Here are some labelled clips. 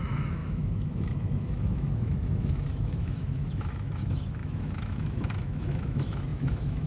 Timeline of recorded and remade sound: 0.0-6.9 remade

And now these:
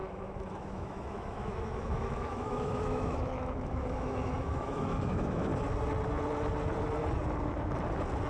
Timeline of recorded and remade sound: 0.0-5.5 remade; 5.5-8.3 recorded